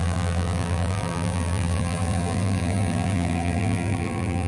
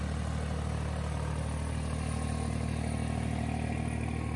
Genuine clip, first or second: second